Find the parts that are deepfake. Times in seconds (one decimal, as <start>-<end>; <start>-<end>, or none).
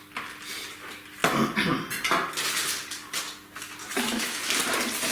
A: 3.8-4.4